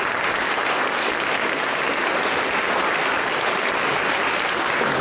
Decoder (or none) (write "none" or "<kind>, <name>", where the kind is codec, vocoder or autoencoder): none